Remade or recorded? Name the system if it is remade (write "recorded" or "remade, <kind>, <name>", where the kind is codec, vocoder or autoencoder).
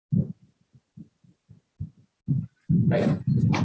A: recorded